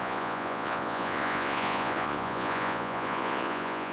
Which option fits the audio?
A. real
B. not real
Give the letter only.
B